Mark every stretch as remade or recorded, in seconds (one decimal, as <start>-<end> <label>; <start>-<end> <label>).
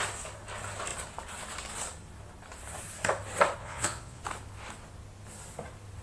0.0-3.6 recorded; 3.6-4.2 remade; 4.2-6.0 recorded